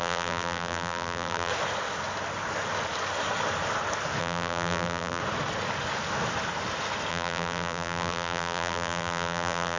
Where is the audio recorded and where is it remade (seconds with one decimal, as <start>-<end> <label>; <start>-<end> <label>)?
0.0-1.5 remade; 1.5-4.2 recorded; 4.2-5.2 remade; 5.2-7.1 recorded; 7.1-9.8 remade